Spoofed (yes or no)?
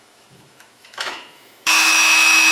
yes